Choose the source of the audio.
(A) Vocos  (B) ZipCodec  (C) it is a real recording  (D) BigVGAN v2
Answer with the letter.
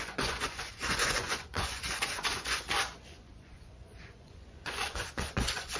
A